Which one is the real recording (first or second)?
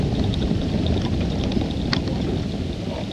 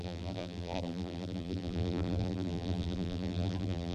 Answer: first